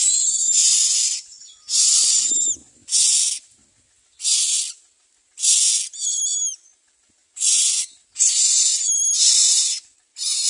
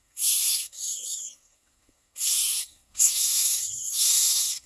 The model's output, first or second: second